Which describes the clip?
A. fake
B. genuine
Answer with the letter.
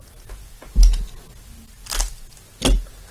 B